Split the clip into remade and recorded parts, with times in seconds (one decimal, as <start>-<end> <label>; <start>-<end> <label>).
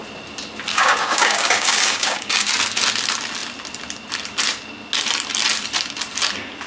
0.0-0.7 recorded; 0.7-2.5 remade; 2.5-6.7 recorded